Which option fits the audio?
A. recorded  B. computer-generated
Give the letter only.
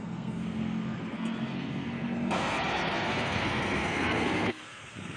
B